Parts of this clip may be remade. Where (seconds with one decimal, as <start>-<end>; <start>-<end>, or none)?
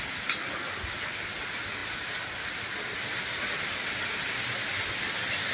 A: none